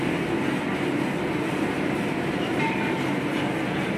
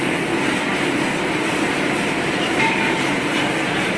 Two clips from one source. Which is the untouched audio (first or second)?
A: first